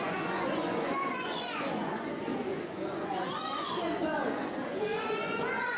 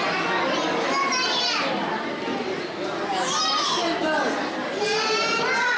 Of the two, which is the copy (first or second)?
first